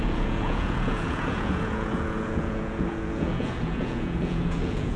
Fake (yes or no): yes